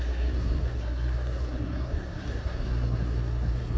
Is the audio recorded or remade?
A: remade